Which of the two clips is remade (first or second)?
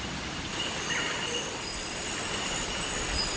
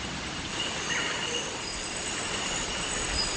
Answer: second